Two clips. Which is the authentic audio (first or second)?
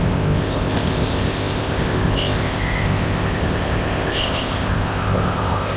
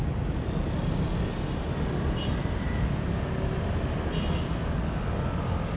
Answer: second